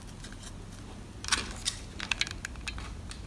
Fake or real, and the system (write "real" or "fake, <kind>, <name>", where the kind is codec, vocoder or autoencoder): real